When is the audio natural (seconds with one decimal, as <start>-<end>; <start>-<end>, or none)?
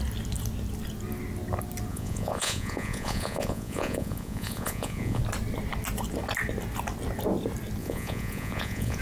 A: 0.0-1.9; 5.2-7.8